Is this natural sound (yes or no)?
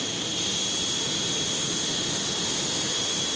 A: yes